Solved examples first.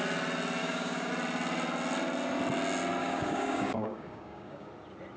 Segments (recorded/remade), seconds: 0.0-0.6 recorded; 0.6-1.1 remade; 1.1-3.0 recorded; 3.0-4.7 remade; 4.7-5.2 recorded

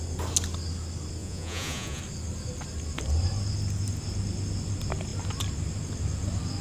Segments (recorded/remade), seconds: 0.0-1.2 recorded; 1.2-2.0 remade; 2.0-6.6 recorded